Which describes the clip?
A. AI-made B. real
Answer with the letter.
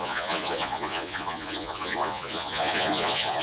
A